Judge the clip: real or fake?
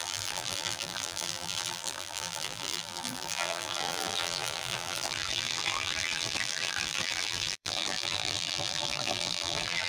fake